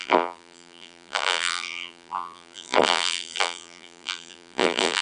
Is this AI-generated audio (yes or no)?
yes